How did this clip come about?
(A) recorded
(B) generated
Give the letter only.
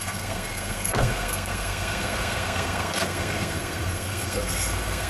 B